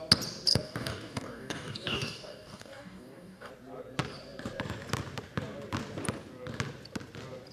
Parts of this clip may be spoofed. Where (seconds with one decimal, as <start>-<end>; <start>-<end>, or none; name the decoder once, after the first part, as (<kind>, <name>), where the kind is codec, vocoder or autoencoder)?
0.5-3.5 (codec, DAC)